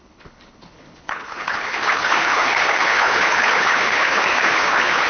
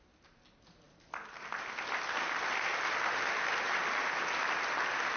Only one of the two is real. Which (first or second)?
second